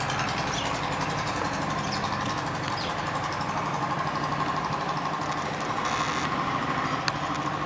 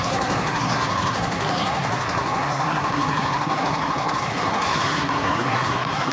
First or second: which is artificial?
second